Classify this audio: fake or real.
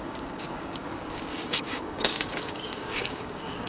fake